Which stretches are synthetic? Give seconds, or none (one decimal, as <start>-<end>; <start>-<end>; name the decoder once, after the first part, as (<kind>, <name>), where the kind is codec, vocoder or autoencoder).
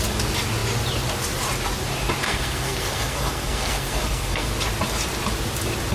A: 2.2-4.5 (codec, SNAC)